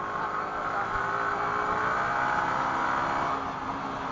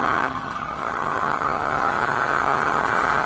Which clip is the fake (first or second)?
second